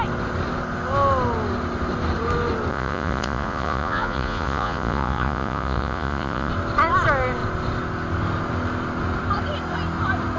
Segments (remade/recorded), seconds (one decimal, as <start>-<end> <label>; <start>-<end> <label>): 0.0-2.7 recorded; 2.7-6.5 remade; 6.5-10.4 recorded

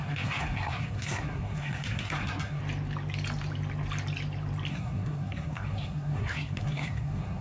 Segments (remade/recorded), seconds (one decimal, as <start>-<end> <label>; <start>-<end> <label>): 0.0-2.6 remade; 2.6-4.7 recorded; 4.7-7.4 remade

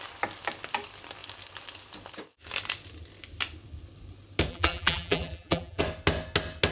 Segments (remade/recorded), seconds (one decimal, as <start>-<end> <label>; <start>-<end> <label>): 0.0-4.5 recorded; 4.5-5.8 remade; 5.8-6.7 recorded

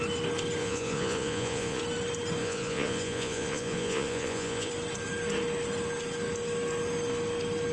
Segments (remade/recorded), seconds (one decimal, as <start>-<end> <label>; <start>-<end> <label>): 0.0-0.6 recorded; 0.6-1.8 remade; 1.8-2.4 recorded; 2.4-4.7 remade; 4.7-7.7 recorded

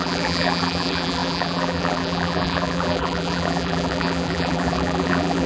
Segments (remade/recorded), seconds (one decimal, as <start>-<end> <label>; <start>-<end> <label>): 0.0-5.5 remade

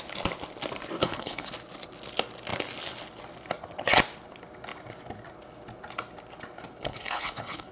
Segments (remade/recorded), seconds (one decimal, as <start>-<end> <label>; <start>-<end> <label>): 0.0-1.0 recorded; 1.0-1.5 remade; 1.5-6.8 recorded; 6.8-7.7 remade

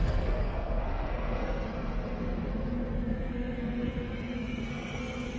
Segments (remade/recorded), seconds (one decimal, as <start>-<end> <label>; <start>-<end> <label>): 0.0-5.4 remade